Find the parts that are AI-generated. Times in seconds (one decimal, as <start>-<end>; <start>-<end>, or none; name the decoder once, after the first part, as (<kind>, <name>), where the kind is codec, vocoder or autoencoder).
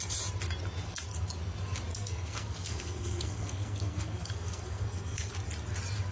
1.9-5.3 (codec, SNAC)